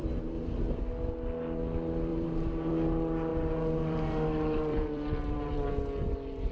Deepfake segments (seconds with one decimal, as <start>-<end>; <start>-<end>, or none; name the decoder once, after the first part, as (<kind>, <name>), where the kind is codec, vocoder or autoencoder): 0.0-0.6 (vocoder, BigVGAN v2); 2.1-2.7; 3.3-5.7

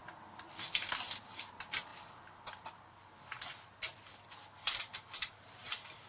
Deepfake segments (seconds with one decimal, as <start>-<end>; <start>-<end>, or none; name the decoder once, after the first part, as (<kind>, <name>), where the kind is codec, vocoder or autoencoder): none

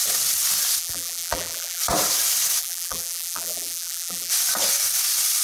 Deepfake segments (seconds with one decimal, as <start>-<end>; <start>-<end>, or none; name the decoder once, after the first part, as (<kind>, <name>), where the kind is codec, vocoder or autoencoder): 0.8-1.8 (vocoder, BigVGAN v2); 2.6-4.3

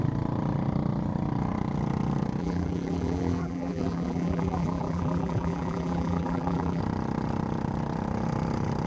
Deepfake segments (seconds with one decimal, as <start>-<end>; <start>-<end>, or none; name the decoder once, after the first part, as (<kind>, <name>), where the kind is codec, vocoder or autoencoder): 2.4-6.8 (vocoder, BigVGAN v2)

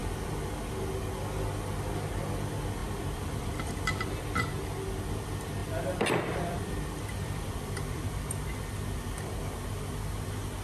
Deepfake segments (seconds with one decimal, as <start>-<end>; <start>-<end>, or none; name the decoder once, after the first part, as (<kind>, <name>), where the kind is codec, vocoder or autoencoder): 2.8-4.5 (vocoder, BigVGAN v2); 5.6-8.5

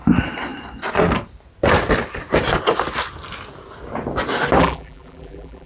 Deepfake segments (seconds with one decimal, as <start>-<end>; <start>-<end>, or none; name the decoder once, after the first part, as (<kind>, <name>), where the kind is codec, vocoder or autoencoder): 4.6-5.7 (vocoder, BigVGAN v2)

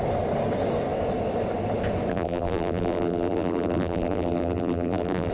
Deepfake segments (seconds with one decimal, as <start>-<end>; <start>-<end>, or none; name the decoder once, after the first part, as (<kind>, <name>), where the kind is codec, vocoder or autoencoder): 2.1-5.3 (vocoder, BigVGAN v2)